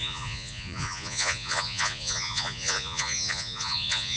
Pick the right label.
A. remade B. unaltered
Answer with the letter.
A